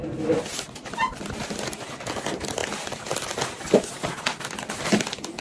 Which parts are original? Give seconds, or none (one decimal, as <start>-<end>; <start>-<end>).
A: 0.0-5.4